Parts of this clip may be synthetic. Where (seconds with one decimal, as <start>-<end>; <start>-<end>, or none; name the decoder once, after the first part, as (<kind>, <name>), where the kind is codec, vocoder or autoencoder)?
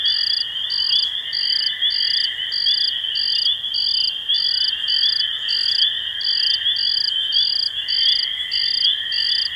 1.3-1.9 (vocoder, BigVGAN v2)